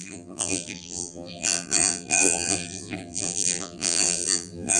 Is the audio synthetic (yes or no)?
yes